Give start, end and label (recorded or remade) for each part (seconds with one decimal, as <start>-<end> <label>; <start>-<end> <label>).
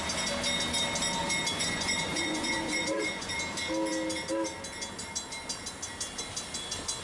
0.0-1.5 recorded; 1.5-3.3 remade; 3.3-7.0 recorded